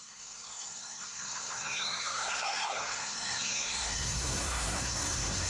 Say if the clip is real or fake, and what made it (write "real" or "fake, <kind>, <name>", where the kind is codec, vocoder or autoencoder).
fake, codec, SNAC